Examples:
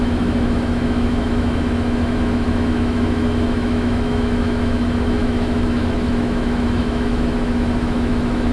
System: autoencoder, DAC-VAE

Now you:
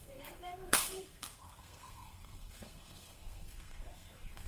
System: codec, SNAC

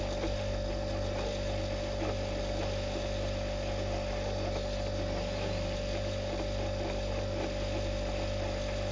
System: none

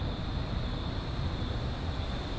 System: none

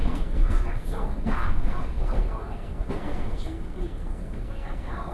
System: codec, SNAC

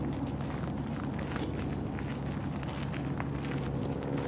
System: none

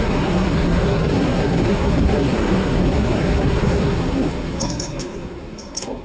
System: codec, SNAC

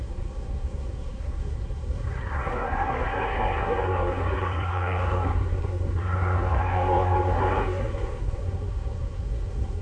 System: codec, SNAC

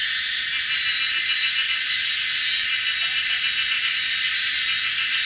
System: none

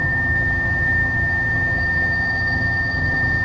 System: vocoder, HiFi-GAN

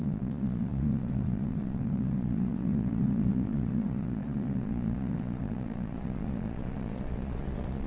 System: vocoder, Vocos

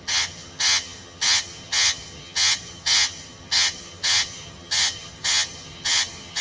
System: vocoder, HiFi-GAN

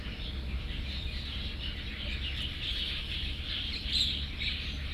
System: none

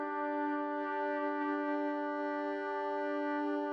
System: none